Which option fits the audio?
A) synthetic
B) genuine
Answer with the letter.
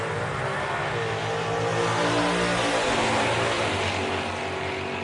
B